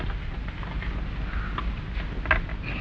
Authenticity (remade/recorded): recorded